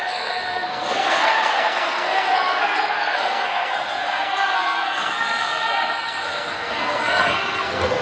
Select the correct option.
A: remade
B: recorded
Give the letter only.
A